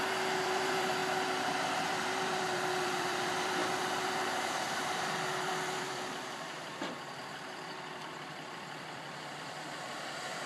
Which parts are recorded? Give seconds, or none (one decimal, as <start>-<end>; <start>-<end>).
1.0-1.9